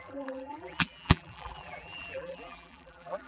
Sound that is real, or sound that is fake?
fake